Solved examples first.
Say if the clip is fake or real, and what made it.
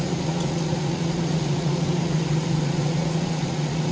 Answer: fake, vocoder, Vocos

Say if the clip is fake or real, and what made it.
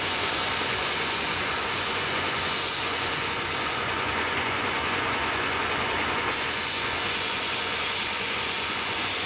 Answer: fake, vocoder, Vocos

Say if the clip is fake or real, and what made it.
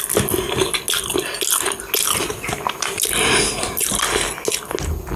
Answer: real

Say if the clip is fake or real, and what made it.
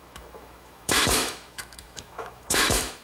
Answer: fake, autoencoder, DAC-VAE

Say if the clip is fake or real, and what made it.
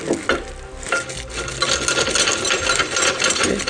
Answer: real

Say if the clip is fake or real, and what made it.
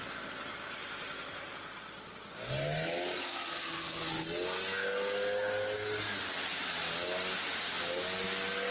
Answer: real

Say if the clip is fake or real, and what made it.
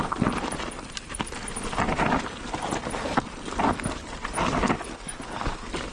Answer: real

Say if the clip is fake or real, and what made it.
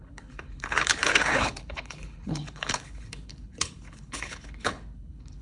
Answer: fake, codec, HILCodec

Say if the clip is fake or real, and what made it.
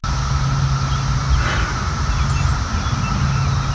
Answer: real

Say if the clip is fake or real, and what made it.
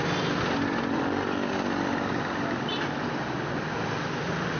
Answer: real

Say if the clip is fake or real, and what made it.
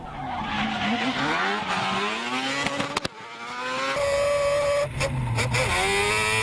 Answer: real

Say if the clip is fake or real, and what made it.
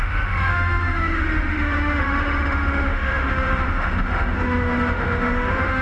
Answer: fake, autoencoder, DAC-VAE